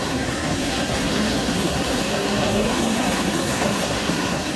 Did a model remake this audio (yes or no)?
yes